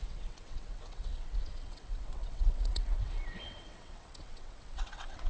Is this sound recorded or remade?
remade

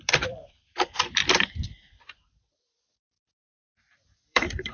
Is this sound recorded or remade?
remade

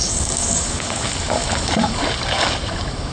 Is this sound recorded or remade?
remade